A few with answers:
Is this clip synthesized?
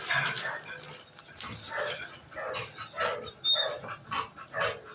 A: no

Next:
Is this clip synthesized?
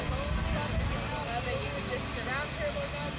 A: no